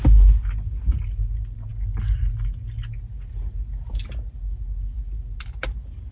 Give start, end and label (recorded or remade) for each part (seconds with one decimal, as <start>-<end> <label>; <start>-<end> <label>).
0.0-6.1 recorded